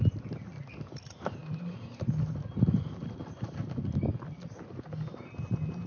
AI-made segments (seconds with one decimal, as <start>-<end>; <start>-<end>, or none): none